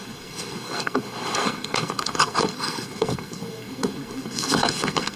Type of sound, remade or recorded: remade